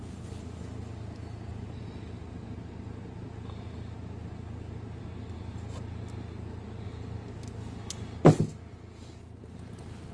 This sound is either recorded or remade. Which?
recorded